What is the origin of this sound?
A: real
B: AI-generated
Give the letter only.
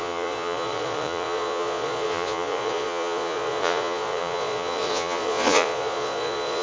B